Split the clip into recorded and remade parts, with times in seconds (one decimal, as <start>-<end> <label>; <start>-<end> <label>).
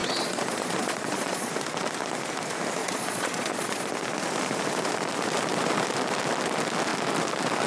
0.0-1.5 remade; 1.5-2.8 recorded; 2.8-3.9 remade; 3.9-7.7 recorded